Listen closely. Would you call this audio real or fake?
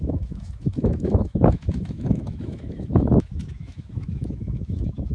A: fake